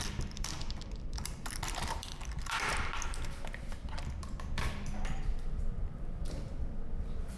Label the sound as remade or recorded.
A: remade